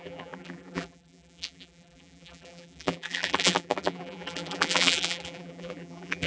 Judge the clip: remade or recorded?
remade